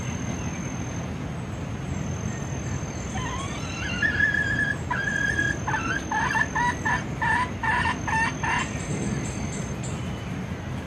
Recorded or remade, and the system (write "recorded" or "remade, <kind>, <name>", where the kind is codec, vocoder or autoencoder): recorded